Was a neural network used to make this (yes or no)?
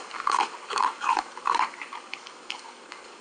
yes